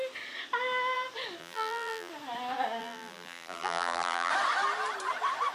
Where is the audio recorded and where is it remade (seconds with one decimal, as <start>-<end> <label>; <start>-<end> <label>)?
0.0-1.4 recorded; 1.4-2.1 remade; 2.1-2.8 recorded; 2.8-4.3 remade; 4.3-5.5 recorded